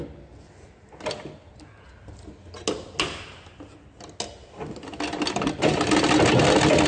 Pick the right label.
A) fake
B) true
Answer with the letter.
B